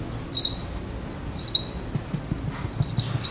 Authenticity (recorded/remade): recorded